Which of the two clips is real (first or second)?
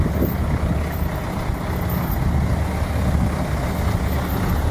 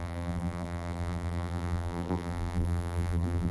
first